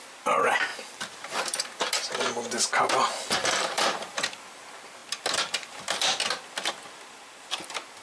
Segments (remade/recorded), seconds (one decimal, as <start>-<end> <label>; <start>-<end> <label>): 0.0-0.7 recorded; 0.7-1.9 remade; 1.9-3.4 recorded; 3.4-4.2 remade; 4.2-8.0 recorded